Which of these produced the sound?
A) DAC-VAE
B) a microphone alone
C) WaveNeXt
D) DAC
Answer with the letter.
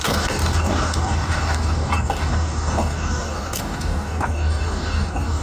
D